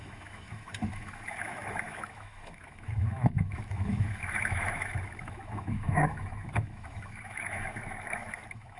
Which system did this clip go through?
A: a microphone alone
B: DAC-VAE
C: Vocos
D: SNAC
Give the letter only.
B